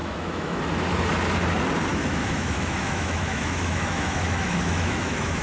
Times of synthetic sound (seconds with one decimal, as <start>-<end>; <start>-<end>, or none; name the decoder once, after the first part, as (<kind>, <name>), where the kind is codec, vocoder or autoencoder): 0.0-0.6 (autoencoder, DAC-VAE); 1.9-5.4